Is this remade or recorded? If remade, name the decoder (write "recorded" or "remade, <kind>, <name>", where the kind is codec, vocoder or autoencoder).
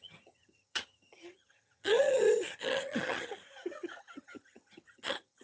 remade, vocoder, HiFi-GAN